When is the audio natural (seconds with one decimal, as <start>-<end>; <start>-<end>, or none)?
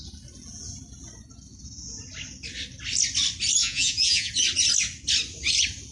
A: 0.0-3.6; 4.3-5.9